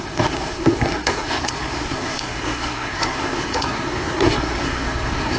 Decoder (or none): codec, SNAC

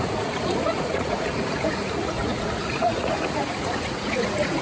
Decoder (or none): vocoder, Vocos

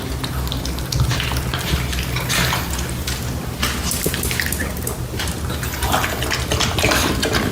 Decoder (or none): none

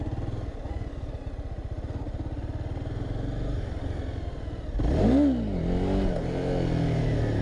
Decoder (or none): none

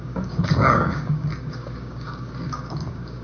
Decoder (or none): codec, DAC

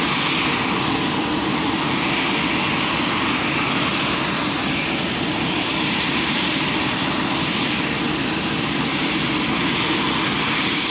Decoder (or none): none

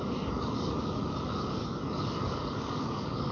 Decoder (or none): codec, DAC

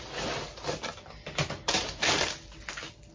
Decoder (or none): none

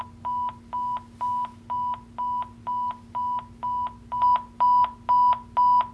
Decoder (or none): none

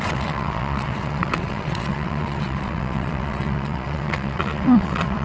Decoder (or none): vocoder, WaveNeXt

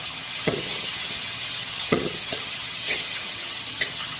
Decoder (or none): vocoder, HiFi-GAN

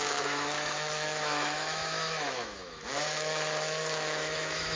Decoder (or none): autoencoder, DAC-VAE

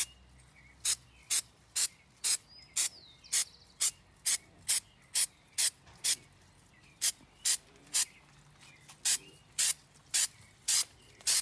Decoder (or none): none